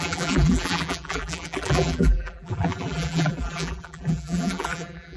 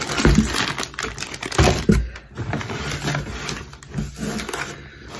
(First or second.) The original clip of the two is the second